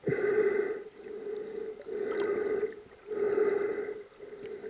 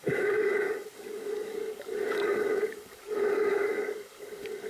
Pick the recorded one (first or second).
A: first